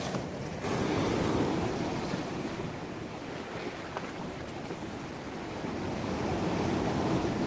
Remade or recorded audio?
recorded